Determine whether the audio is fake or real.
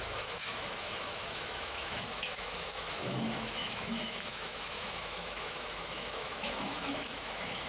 fake